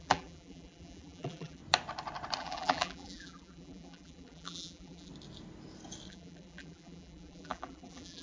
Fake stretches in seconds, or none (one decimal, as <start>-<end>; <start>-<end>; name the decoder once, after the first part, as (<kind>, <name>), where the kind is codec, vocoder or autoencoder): 0.0-1.6 (vocoder, BigVGAN v2); 2.4-5.1; 6.1-8.2